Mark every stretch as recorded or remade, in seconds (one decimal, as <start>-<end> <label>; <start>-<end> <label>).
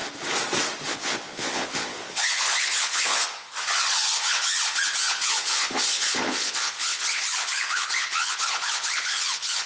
0.0-0.9 recorded; 0.9-9.7 remade